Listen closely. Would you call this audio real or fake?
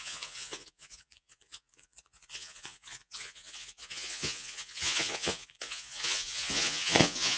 fake